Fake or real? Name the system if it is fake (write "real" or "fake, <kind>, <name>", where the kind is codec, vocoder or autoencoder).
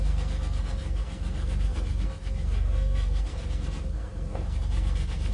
fake, codec, SNAC